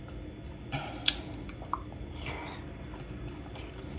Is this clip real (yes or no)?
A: yes